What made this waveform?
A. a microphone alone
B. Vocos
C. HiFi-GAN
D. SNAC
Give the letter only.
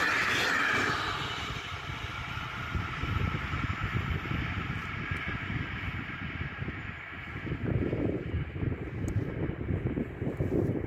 A